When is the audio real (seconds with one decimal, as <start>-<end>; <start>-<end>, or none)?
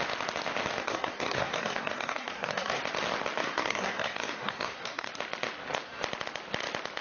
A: 0.0-0.8; 2.8-3.4; 5.1-7.0